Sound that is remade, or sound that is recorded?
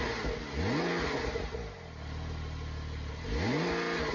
recorded